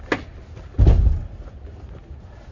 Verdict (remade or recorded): recorded